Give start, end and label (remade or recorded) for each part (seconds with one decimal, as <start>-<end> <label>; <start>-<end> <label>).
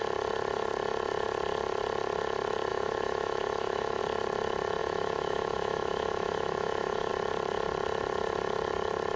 0.0-2.7 recorded; 2.7-4.0 remade; 4.0-4.8 recorded; 4.8-7.1 remade; 7.1-9.2 recorded